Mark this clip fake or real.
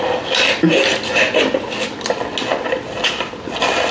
real